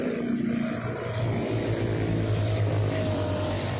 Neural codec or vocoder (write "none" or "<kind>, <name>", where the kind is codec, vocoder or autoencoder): none